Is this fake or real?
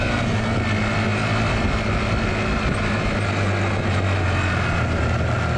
real